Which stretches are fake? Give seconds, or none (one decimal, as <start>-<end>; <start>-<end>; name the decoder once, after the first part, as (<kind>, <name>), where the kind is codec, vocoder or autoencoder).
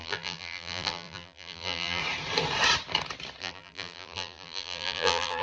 0.0-2.0 (vocoder, BigVGAN v2); 3.4-5.4